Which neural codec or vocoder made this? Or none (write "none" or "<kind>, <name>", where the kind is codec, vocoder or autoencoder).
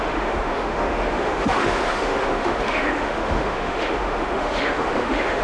autoencoder, DAC-VAE